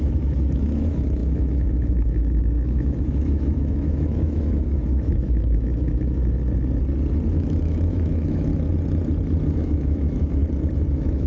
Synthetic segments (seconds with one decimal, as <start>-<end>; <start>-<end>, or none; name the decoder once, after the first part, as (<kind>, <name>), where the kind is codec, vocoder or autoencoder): 0.0-6.2 (autoencoder, DAC-VAE); 7.3-8.5; 9.5-10.4; 10.9-11.3